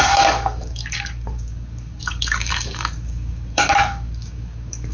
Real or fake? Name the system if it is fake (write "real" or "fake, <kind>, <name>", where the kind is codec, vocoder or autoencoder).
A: fake, codec, DAC